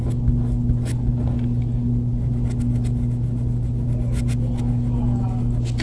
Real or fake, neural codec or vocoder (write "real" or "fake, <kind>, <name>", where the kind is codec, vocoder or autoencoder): real